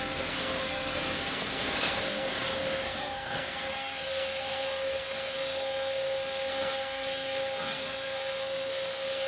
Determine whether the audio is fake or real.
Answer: fake